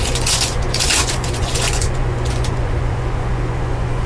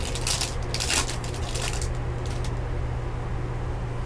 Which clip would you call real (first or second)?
second